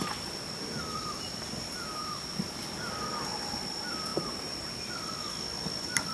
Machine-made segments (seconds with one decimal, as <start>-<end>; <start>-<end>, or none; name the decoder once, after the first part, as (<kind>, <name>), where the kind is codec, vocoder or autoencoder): 4.1-4.9 (vocoder, BigVGAN v2)